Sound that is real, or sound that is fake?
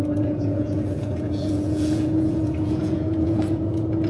fake